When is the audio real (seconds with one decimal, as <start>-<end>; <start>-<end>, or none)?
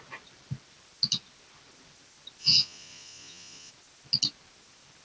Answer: 0.0-2.4; 3.7-5.0